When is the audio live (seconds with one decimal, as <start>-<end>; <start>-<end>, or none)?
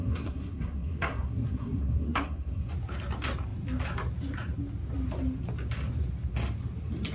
2.7-7.1